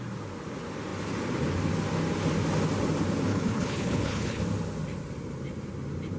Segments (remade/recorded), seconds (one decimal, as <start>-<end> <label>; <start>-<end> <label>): 0.0-3.3 recorded; 3.3-4.4 remade; 4.4-6.2 recorded